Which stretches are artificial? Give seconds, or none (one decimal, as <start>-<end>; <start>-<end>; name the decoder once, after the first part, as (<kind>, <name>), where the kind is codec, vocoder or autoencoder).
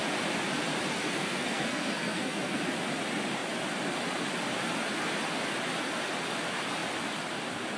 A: 0.9-2.6 (codec, SNAC)